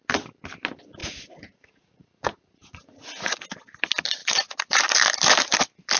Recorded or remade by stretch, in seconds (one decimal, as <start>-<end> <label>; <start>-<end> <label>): 0.0-1.0 recorded; 1.0-3.4 remade; 3.4-6.0 recorded